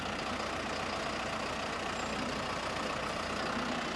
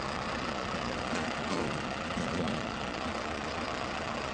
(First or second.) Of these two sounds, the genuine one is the first